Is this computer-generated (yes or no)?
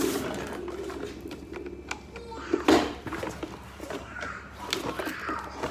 no